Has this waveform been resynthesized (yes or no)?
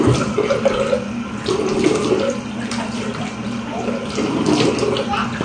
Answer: no